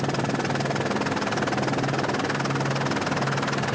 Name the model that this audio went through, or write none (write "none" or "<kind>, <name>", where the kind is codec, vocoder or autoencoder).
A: none